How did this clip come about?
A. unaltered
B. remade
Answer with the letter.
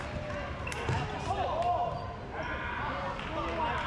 A